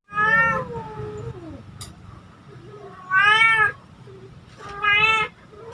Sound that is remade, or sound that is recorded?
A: recorded